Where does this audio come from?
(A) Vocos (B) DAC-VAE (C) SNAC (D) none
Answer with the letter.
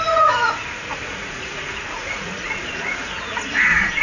A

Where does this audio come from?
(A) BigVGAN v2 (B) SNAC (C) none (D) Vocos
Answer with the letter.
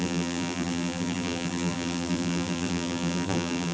A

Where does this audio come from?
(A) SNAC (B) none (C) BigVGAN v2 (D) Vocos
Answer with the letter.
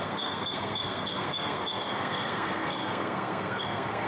A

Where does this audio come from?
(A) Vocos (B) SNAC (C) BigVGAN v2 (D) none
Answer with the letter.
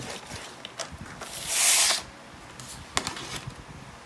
D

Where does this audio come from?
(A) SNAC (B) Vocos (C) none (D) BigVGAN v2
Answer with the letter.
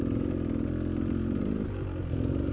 C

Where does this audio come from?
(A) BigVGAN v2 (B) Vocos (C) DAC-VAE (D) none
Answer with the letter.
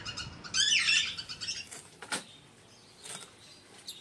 D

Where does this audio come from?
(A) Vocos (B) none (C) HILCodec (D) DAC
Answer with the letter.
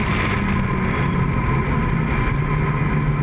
B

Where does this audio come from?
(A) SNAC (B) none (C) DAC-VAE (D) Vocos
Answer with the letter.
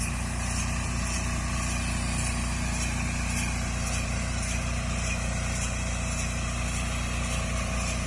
B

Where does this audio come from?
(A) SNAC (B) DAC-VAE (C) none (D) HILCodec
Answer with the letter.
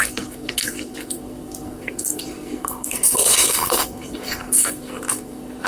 A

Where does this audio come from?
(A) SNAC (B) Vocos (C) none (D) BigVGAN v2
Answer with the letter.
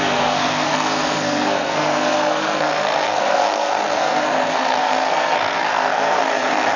A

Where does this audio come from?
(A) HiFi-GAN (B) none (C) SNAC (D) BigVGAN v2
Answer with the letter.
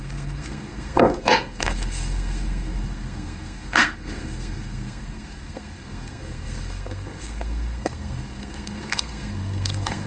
C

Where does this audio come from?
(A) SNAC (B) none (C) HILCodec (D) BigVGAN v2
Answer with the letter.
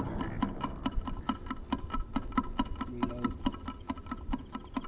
D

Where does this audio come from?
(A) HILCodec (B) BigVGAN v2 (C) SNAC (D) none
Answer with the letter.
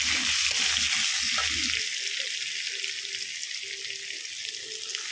D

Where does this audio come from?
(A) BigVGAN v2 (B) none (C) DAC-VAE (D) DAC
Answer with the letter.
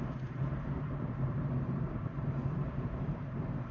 A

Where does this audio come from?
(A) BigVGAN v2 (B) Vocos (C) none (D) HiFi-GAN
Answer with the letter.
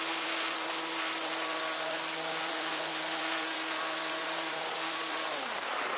A